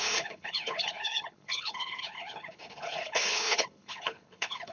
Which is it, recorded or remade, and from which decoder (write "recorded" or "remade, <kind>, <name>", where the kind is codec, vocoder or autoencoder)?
remade, codec, HILCodec